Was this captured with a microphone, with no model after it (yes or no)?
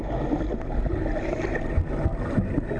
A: yes